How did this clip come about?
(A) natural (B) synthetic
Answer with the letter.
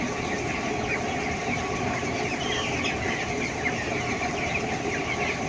A